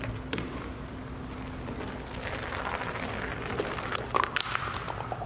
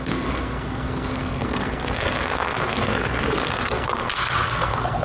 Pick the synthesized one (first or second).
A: second